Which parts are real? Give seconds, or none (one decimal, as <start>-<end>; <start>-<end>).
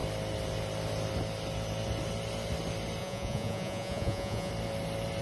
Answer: 0.0-3.0; 4.5-5.2